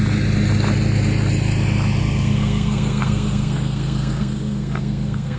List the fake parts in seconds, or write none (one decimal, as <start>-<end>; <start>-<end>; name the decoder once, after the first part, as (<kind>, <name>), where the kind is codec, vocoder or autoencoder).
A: 2.0-5.4 (codec, SNAC)